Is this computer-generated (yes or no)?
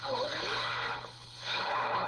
yes